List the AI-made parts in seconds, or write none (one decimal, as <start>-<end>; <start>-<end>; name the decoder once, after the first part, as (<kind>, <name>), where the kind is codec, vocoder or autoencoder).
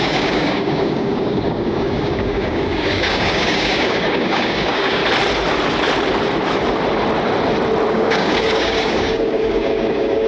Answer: 0.0-5.0 (codec, DAC); 7.9-10.3